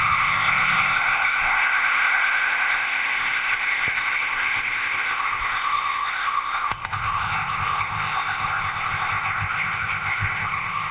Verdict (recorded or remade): remade